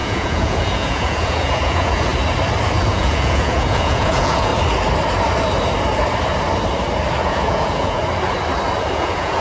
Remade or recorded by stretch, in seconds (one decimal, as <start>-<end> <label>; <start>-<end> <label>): 0.0-2.1 remade; 2.1-2.9 recorded; 2.9-4.5 remade; 4.5-7.2 recorded; 7.2-8.0 remade; 8.0-8.9 recorded; 8.9-9.4 remade